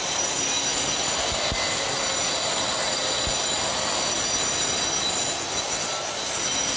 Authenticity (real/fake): real